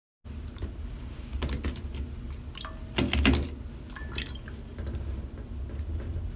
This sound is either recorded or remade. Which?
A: recorded